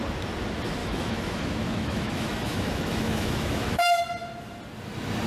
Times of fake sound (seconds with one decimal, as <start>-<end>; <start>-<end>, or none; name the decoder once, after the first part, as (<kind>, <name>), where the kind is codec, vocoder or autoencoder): 0.8-4.0 (autoencoder, DAC-VAE)